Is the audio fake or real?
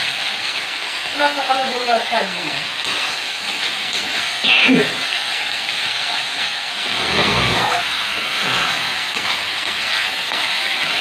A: fake